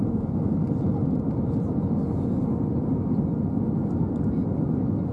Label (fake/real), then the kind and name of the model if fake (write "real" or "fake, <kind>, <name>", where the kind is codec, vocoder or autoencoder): real